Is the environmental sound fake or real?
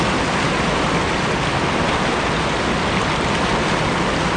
real